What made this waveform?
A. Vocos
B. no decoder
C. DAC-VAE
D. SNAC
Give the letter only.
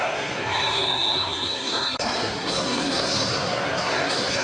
D